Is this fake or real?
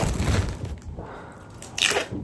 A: real